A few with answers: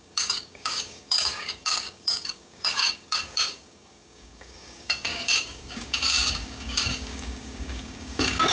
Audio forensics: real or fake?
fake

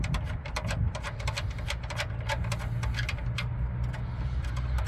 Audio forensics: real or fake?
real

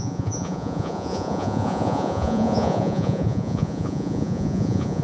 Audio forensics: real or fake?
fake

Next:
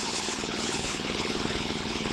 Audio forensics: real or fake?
fake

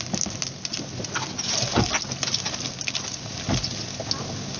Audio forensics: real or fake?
real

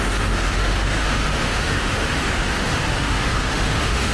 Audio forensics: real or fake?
fake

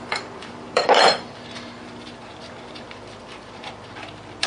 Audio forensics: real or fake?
fake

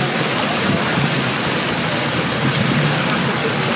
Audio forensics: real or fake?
real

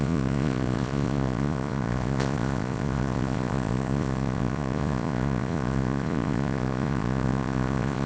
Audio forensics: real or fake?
fake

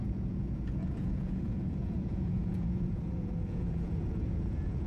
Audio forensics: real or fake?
fake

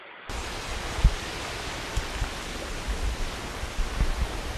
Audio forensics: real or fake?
real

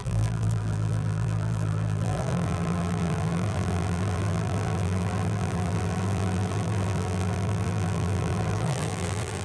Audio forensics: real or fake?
fake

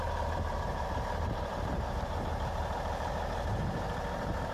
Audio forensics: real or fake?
fake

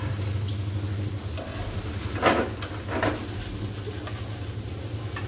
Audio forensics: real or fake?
real